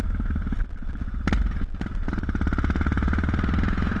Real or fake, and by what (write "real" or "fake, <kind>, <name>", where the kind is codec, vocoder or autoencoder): real